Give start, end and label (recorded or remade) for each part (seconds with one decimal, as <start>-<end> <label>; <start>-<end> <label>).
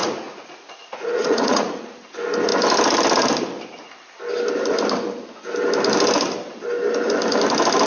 0.0-1.8 remade; 1.8-7.9 recorded